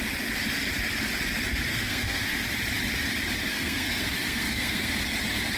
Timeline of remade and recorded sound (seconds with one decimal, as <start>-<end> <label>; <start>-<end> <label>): 0.0-1.7 recorded; 1.7-2.4 remade; 2.4-3.5 recorded; 3.5-4.9 remade; 4.9-5.6 recorded

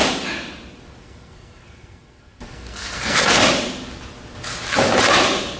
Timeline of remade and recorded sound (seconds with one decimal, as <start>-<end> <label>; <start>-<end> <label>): 0.0-1.0 recorded; 1.0-3.4 remade; 3.4-5.6 recorded

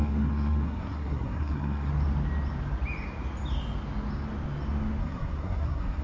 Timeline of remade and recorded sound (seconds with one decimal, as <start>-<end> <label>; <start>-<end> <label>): 0.0-1.9 remade; 1.9-5.0 recorded; 5.0-6.0 remade

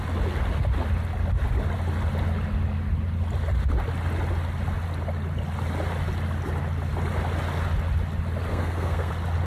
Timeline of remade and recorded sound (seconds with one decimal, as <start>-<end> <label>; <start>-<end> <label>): 0.0-8.5 recorded; 8.5-9.1 remade; 9.1-9.5 recorded

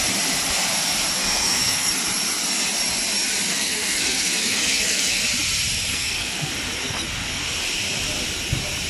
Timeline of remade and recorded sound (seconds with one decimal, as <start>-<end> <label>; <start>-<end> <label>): 0.0-1.2 recorded; 1.2-1.9 remade; 1.9-3.5 recorded; 3.5-5.2 remade; 5.2-5.9 recorded; 5.9-6.5 remade; 6.5-8.9 recorded

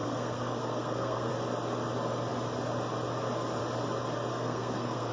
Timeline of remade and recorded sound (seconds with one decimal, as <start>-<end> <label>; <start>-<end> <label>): 0.0-1.3 remade; 1.3-4.3 recorded; 4.3-5.1 remade

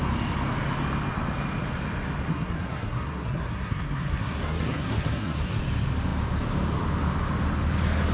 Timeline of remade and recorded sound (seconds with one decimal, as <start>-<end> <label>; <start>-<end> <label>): 0.0-2.3 recorded; 2.3-5.6 remade; 5.6-8.1 recorded